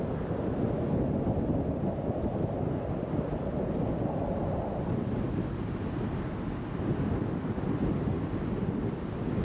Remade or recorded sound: recorded